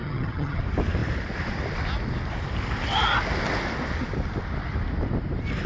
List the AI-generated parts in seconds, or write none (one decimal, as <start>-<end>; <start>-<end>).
0.0-0.6